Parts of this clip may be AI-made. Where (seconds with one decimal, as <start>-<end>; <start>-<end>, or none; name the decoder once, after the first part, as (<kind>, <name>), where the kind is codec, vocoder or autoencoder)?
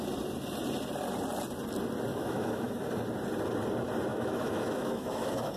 2.1-2.9 (autoencoder, DAC-VAE); 4.1-5.6